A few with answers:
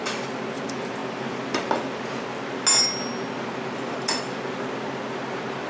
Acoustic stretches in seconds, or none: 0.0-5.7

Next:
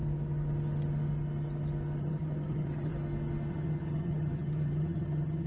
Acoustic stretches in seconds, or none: 0.0-2.0; 2.9-3.5

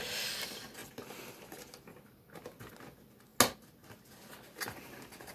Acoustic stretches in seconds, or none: 0.0-5.3

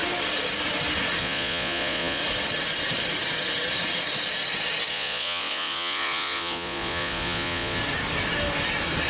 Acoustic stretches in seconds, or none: 0.0-1.2; 2.2-4.9; 7.8-9.1

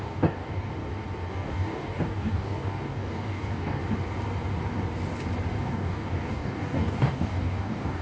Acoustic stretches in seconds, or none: 0.7-1.3; 3.8-5.7

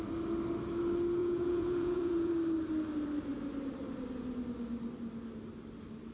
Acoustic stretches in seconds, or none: 0.0-1.2; 2.3-6.1